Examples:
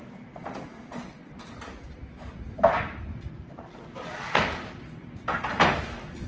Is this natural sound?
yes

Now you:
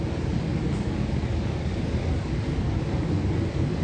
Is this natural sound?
no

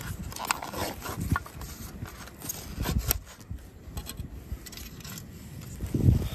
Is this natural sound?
yes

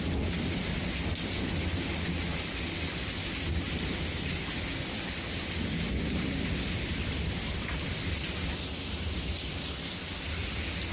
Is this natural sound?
yes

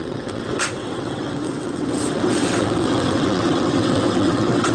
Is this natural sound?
no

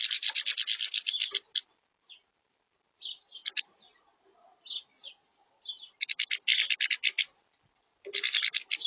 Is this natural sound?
yes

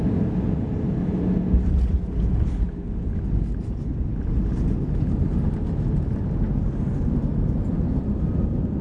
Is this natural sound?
yes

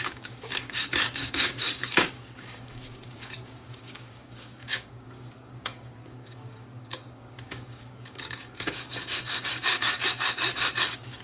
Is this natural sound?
no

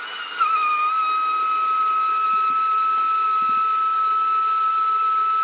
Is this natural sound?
yes